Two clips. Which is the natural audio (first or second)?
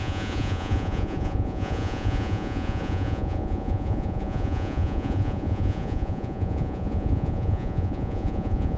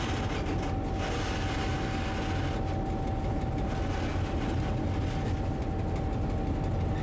second